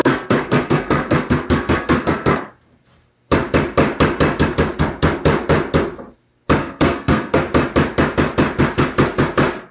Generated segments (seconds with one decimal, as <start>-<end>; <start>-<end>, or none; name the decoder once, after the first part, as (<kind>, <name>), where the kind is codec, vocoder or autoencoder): 0.0-2.5 (codec, SNAC); 6.6-7.4